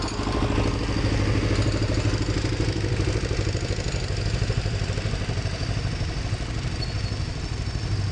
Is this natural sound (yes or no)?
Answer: yes